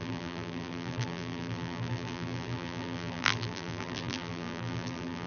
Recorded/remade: remade